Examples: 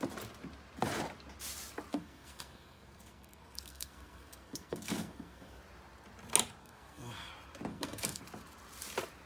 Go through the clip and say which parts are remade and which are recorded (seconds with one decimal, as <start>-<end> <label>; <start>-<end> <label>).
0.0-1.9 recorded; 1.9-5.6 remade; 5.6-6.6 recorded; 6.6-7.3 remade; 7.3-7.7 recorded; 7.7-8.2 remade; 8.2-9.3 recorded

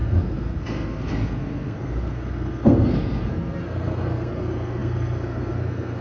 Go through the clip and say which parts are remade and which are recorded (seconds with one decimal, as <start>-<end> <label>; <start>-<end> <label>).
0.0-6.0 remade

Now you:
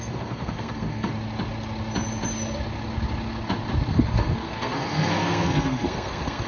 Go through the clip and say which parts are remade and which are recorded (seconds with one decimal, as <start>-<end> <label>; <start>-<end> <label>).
0.0-1.1 remade; 1.1-3.9 recorded; 3.9-6.5 remade

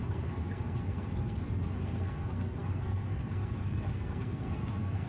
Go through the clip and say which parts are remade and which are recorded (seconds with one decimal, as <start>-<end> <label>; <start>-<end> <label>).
0.0-5.1 remade

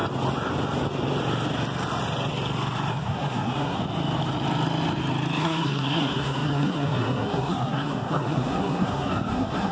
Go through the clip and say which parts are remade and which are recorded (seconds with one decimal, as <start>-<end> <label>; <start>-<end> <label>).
0.0-2.9 recorded; 2.9-3.8 remade; 3.8-5.4 recorded; 5.4-9.7 remade

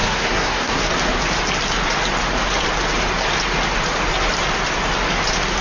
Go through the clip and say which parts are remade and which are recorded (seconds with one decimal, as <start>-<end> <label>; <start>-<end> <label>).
0.0-0.9 remade; 0.9-5.6 recorded